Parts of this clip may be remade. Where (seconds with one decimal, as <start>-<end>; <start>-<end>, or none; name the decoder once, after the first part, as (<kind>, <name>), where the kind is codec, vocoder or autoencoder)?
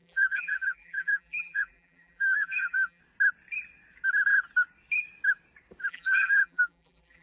0.0-3.0 (vocoder, BigVGAN v2); 5.9-7.2